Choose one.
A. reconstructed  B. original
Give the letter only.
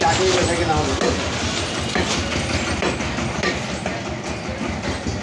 B